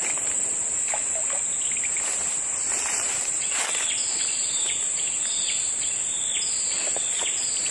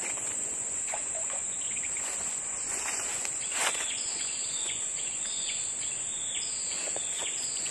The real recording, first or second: first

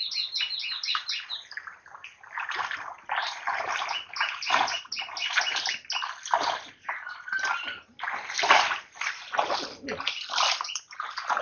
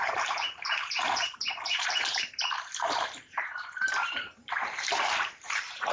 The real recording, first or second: first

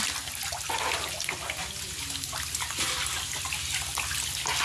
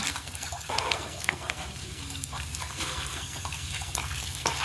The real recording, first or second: first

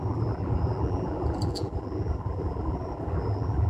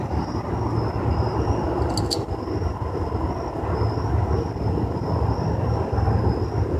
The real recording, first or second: second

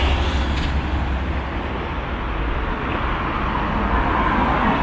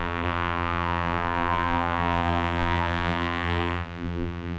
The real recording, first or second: first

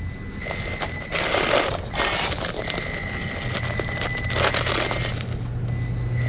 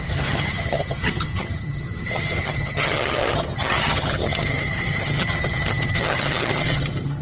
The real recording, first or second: first